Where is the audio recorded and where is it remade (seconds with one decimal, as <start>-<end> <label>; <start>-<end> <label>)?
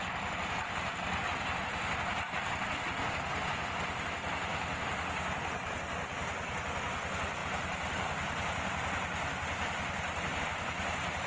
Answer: 0.0-11.3 recorded